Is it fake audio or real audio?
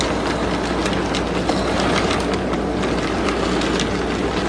real